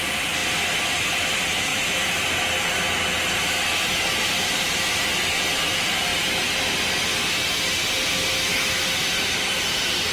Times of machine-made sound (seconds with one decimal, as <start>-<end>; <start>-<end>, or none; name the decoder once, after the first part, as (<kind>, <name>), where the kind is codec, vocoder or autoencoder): 0.0-0.4 (vocoder, BigVGAN v2); 1.0-1.7; 4.1-4.8; 5.4-6.1; 9.2-10.1